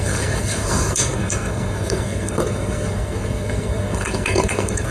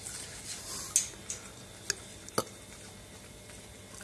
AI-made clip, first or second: first